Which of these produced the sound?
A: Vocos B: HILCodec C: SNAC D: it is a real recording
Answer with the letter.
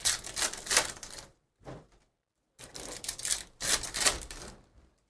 D